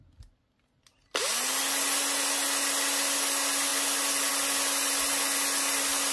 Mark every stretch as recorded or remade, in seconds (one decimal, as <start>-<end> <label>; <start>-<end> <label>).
0.0-6.1 recorded